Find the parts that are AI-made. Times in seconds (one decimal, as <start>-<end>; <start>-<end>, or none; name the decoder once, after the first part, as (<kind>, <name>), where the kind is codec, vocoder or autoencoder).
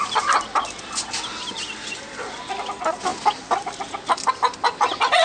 none